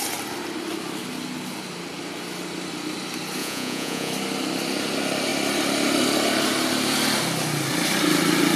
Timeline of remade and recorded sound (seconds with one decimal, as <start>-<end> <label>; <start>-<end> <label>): 0.0-3.4 recorded; 3.4-4.1 remade; 4.1-8.6 recorded